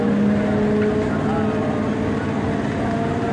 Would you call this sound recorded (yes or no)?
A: yes